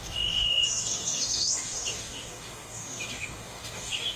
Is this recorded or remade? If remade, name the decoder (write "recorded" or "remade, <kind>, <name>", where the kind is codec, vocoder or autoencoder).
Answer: remade, codec, DAC